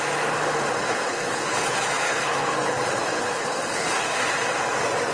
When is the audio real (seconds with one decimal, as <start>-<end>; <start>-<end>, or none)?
0.0-0.8; 3.9-5.1